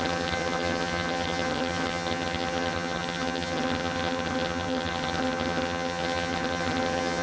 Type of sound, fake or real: fake